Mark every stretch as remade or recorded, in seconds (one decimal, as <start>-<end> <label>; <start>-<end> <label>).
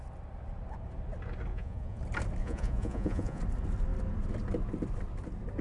0.0-1.5 recorded; 1.5-2.0 remade; 2.0-2.4 recorded; 2.4-3.4 remade; 3.4-5.6 recorded